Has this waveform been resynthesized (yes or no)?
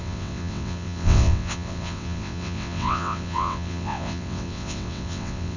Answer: yes